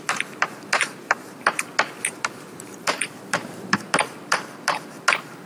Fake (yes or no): yes